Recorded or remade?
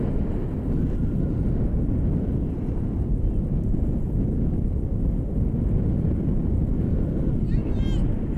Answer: recorded